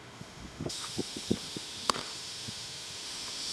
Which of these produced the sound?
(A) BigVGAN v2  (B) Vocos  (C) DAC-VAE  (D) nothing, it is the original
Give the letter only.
C